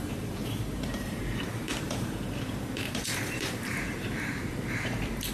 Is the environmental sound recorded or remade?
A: remade